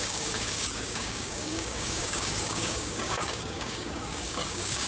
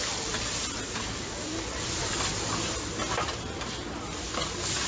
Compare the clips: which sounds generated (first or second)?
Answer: first